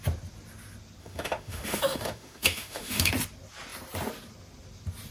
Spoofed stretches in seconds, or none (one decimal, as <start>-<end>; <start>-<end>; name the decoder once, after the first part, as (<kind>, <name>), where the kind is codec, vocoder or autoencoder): 1.0-3.1 (autoencoder, DAC-VAE)